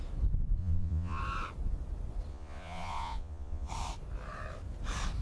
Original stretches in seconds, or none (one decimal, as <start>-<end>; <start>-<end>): 0.0-0.6; 1.2-2.3; 3.7-5.2